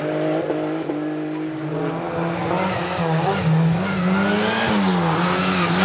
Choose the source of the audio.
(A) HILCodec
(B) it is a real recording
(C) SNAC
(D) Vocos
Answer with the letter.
B